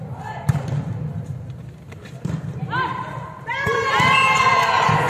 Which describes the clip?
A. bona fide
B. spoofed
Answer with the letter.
B